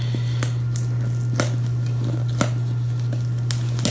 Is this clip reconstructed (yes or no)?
no